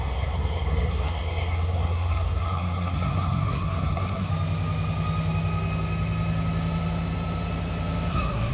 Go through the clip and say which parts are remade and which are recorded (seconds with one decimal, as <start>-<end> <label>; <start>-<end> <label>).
0.0-4.3 remade; 4.3-8.1 recorded; 8.1-8.5 remade